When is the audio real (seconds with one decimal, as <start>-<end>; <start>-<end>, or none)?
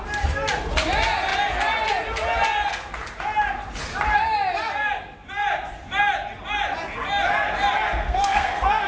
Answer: 0.0-8.0